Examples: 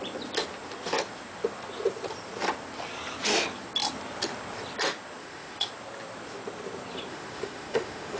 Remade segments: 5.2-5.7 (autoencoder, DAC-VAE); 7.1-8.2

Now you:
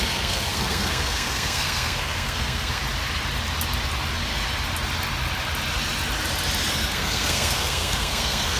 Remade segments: 0.0-2.8 (codec, SNAC); 6.7-8.6

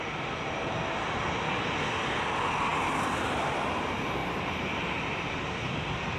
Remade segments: 4.2-5.5 (vocoder, BigVGAN v2)

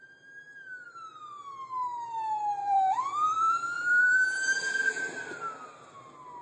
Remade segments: 2.6-5.0 (vocoder, BigVGAN v2)

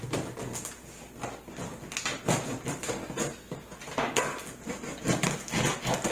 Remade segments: none

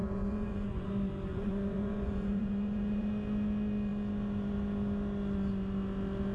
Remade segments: 0.0-0.9 (vocoder, Vocos); 1.3-3.1